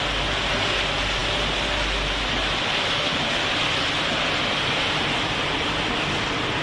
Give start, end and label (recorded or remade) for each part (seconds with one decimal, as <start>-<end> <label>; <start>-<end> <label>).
0.0-6.6 recorded